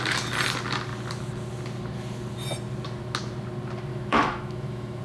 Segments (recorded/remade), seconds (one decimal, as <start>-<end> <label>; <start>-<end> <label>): 0.0-3.9 recorded; 3.9-5.0 remade